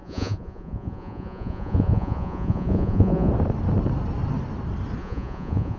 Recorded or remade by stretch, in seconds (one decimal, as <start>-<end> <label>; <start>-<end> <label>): 0.0-3.3 remade; 3.3-5.0 recorded; 5.0-5.8 remade